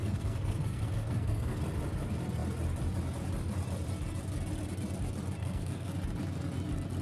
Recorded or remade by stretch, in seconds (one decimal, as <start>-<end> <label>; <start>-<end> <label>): 0.0-1.6 remade; 1.6-5.4 recorded; 5.4-5.9 remade; 5.9-7.0 recorded